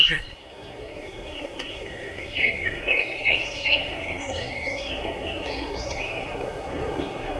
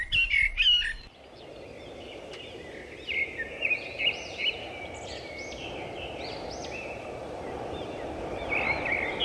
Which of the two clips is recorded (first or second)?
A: second